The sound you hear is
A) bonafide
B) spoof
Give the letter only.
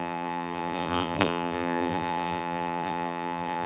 B